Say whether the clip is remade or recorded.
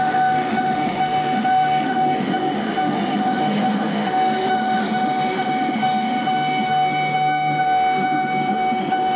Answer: remade